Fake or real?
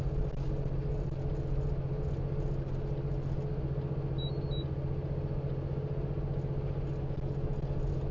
real